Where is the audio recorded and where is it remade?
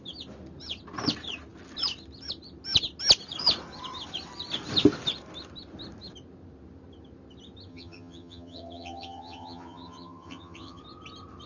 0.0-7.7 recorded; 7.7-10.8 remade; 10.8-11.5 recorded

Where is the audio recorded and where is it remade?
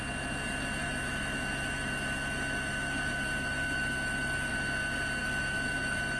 0.0-0.8 recorded; 0.8-4.5 remade; 4.5-5.2 recorded; 5.2-6.2 remade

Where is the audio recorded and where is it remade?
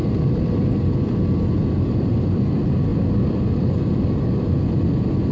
0.0-5.3 recorded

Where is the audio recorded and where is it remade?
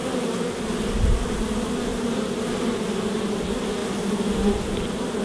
0.0-1.9 recorded; 1.9-2.5 remade; 2.5-3.8 recorded; 3.8-4.8 remade; 4.8-5.2 recorded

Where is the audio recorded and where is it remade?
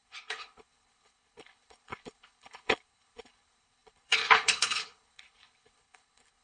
0.0-6.4 remade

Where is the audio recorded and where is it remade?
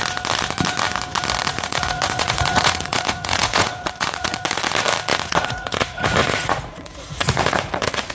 0.0-1.4 recorded; 1.4-4.4 remade; 4.4-5.1 recorded; 5.1-8.1 remade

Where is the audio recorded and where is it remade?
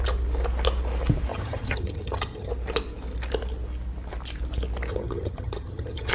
0.0-1.3 recorded; 1.3-2.5 remade; 2.5-4.9 recorded; 4.9-6.1 remade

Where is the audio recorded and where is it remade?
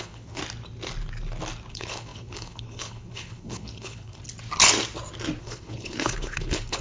0.0-0.4 remade; 0.4-1.7 recorded; 1.7-4.2 remade; 4.2-5.4 recorded; 5.4-6.8 remade